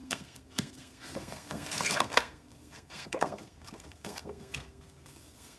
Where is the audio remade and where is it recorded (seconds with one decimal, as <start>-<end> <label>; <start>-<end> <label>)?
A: 0.0-5.6 remade